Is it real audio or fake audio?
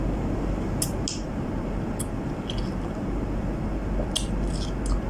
real